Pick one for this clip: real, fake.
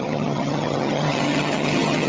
fake